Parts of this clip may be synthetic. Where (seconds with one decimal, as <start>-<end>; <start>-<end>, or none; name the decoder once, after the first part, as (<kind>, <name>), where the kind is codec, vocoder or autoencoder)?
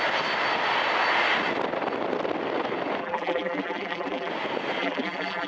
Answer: 3.0-4.3 (vocoder, BigVGAN v2); 4.8-5.5